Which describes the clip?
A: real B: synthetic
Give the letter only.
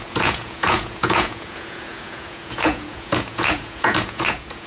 B